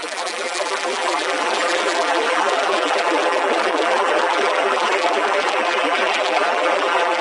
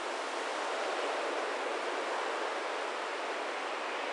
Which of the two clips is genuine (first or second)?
second